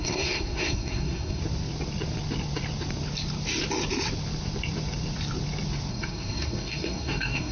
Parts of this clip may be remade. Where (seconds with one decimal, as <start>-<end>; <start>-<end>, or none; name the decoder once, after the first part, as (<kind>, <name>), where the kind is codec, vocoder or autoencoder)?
0.0-1.4 (codec, SNAC); 5.9-7.5